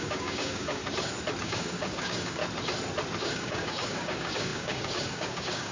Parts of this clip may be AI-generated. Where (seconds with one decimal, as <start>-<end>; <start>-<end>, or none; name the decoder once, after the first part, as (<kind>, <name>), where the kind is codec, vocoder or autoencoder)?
0.0-0.8 (codec, DAC); 1.4-2.4; 3.2-5.7